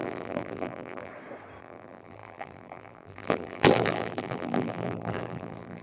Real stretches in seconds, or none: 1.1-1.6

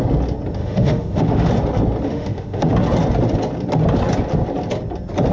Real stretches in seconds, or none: 0.0-0.6; 1.5-2.1; 2.7-5.3

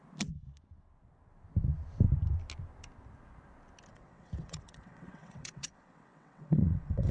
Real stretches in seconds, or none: 0.0-3.9

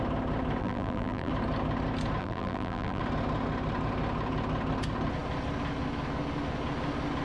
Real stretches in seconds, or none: 0.0-0.6; 1.3-2.2; 3.0-7.2

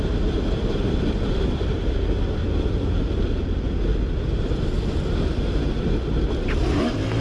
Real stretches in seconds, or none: 2.4-6.7

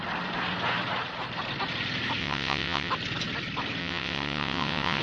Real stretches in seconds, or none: 0.0-2.2; 2.9-3.8

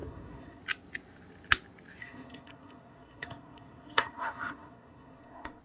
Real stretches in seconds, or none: 0.6-2.0

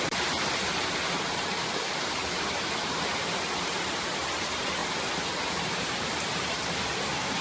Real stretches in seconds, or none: 0.6-1.7; 4.8-5.5